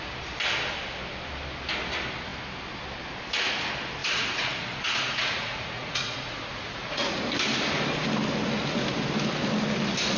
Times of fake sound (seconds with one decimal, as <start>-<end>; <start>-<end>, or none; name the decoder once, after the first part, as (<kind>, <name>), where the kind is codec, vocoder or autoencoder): 4.0-7.3 (vocoder, Vocos)